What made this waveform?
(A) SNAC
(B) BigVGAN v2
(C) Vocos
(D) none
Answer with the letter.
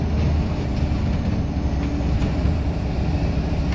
D